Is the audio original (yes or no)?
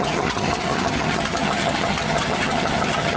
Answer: no